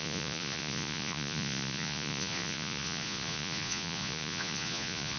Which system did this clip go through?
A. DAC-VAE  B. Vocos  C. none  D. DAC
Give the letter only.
B